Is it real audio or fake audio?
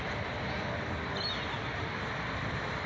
real